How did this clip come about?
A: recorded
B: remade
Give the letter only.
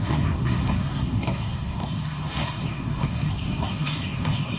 B